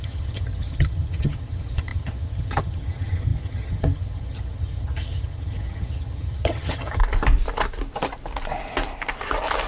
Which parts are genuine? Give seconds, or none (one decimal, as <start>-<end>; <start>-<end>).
7.0-9.7